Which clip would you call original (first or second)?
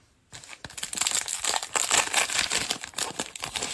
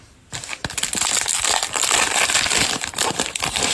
first